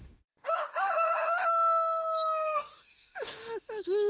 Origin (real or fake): fake